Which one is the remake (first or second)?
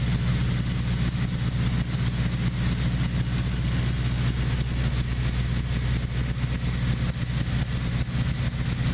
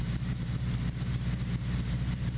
second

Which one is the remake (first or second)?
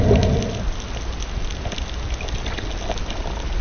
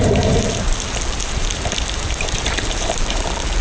second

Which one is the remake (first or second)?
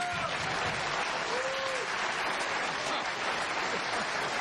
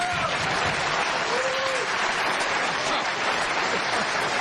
second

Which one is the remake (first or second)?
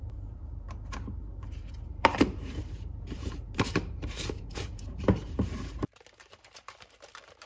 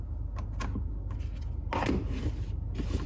first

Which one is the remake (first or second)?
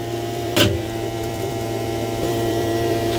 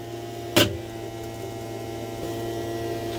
first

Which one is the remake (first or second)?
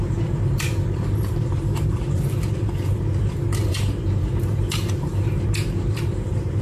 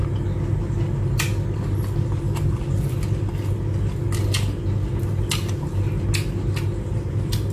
first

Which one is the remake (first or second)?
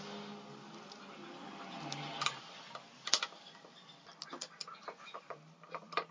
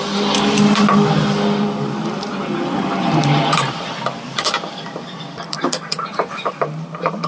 second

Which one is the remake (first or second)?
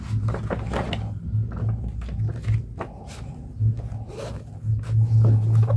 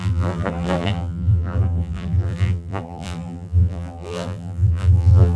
second